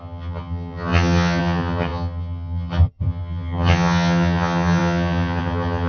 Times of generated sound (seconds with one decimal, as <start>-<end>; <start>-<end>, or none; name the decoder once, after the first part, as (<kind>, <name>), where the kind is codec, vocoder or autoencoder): 0.0-5.9 (vocoder, HiFi-GAN)